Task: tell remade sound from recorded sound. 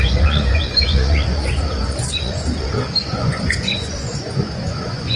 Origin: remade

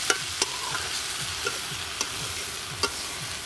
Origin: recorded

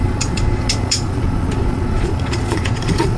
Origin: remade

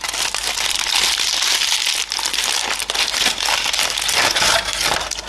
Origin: recorded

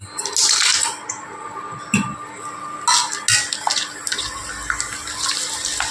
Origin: recorded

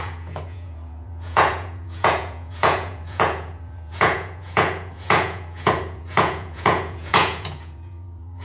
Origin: remade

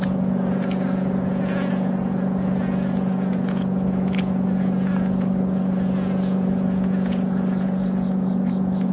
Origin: remade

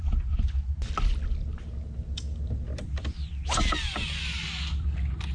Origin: recorded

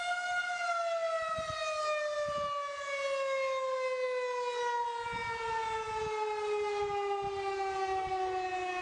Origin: recorded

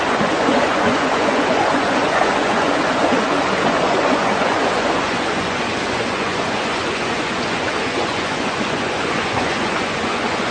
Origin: remade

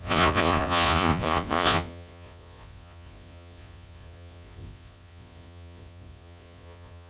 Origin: remade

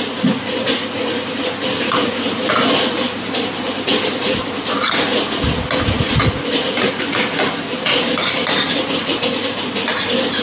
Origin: recorded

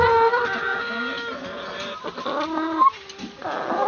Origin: recorded